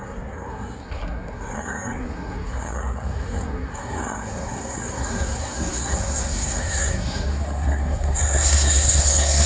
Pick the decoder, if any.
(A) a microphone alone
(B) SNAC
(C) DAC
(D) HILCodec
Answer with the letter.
B